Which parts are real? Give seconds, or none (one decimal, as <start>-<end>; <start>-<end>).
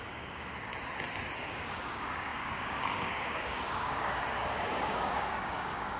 0.7-1.4